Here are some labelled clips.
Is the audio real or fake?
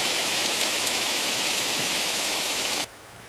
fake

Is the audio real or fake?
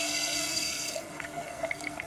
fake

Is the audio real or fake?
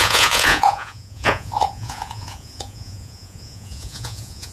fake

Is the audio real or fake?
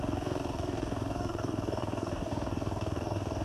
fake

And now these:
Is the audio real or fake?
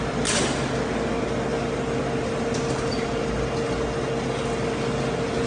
real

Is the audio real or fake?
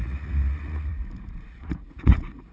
fake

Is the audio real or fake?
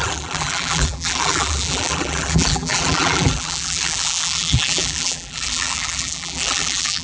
fake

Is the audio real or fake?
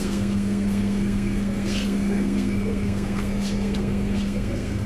fake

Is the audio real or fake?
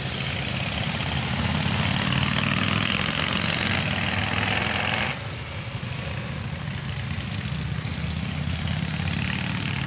real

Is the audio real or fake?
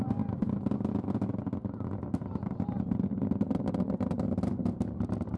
real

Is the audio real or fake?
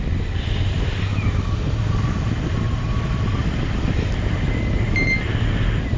real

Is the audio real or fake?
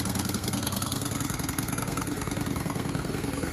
fake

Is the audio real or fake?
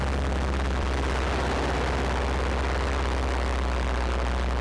real